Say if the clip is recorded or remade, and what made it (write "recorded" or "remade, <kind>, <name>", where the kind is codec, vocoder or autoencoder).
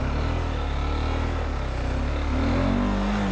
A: recorded